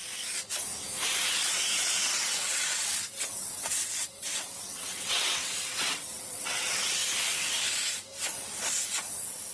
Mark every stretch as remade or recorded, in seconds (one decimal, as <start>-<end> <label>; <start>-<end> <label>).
0.0-1.5 recorded; 1.5-7.0 remade; 7.0-9.0 recorded; 9.0-9.5 remade